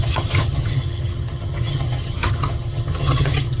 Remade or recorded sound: remade